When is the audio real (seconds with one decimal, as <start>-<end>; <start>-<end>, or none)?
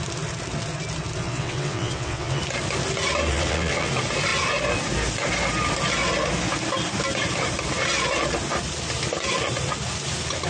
0.0-1.2; 2.4-3.3; 3.9-10.5